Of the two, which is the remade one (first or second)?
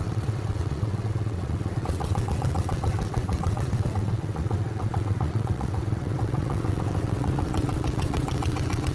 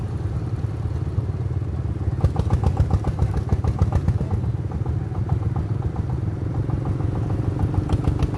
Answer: first